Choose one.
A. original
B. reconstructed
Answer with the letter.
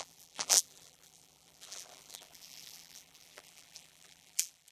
B